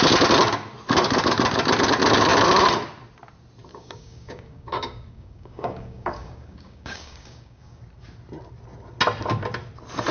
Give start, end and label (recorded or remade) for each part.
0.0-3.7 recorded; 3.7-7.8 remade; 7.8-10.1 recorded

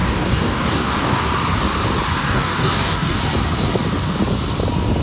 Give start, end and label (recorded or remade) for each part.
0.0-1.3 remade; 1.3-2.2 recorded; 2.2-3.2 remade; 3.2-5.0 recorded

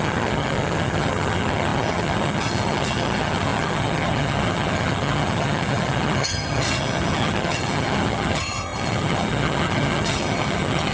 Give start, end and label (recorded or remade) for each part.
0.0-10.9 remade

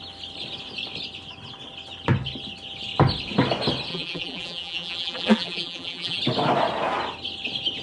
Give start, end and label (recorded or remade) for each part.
0.0-3.9 recorded; 3.9-6.2 remade; 6.2-7.8 recorded